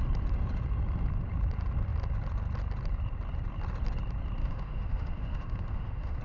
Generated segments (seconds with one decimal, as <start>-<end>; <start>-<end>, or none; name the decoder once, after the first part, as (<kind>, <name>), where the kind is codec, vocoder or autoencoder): 4.4-6.2 (autoencoder, DAC-VAE)